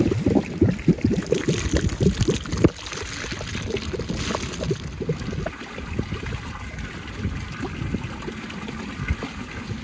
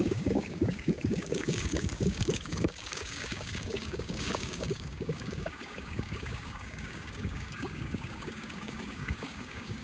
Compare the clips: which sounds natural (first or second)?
first